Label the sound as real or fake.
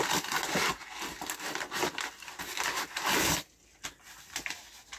real